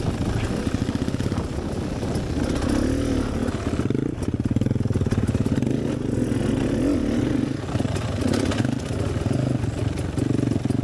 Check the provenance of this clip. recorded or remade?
recorded